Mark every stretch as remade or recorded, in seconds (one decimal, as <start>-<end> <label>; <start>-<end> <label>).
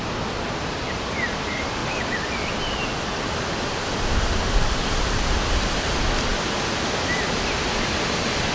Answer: 0.0-8.5 recorded